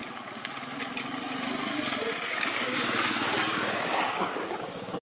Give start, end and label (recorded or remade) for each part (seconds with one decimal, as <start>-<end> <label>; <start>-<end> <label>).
0.0-2.3 recorded; 2.3-5.0 remade